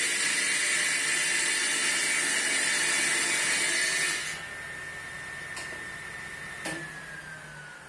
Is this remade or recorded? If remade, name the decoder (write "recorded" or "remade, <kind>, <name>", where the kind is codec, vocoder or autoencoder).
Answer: recorded